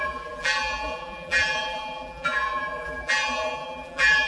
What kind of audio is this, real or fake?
fake